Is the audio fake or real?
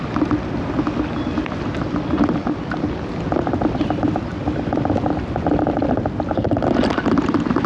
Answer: real